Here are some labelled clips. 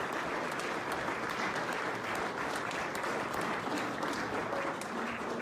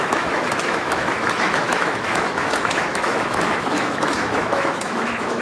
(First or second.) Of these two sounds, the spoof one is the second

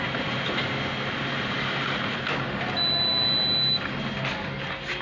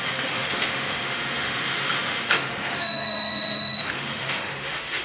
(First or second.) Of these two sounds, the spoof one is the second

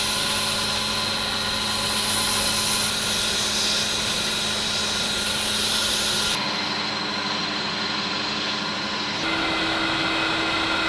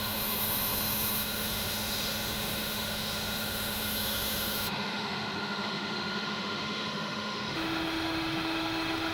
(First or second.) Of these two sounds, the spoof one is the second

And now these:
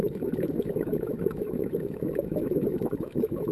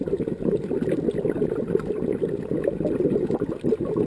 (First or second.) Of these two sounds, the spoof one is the first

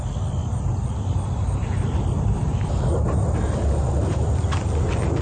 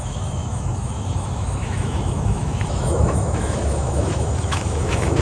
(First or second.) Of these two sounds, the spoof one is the second